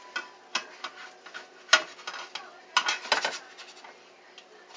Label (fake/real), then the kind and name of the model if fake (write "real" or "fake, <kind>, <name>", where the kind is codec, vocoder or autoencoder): real